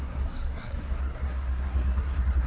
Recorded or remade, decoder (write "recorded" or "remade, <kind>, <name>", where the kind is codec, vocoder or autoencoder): remade, codec, SNAC